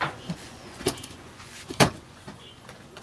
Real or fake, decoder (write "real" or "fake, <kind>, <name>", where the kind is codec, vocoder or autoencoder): fake, vocoder, Vocos